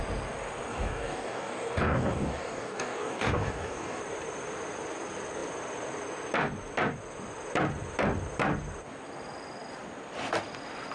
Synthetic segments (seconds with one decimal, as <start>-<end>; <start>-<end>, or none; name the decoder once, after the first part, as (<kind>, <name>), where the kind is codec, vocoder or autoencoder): 0.7-4.0 (codec, DAC)